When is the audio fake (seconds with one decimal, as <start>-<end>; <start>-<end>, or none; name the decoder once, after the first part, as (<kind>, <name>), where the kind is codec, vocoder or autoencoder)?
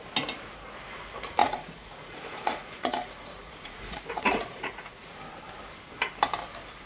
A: 1.4-5.2 (vocoder, Vocos)